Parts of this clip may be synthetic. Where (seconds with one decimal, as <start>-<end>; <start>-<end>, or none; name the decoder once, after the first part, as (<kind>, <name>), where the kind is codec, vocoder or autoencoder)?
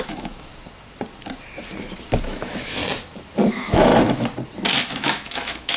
0.0-0.5 (autoencoder, DAC-VAE); 2.2-2.8; 3.5-3.9; 4.9-5.8